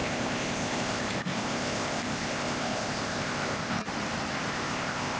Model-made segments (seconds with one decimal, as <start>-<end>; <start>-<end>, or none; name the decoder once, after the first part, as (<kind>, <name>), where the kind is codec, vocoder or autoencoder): 0.0-3.8 (codec, ZipCodec); 4.5-5.2